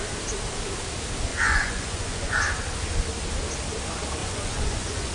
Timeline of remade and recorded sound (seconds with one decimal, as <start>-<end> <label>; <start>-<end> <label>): 0.0-1.3 recorded; 1.3-2.4 remade; 2.4-4.2 recorded; 4.2-5.1 remade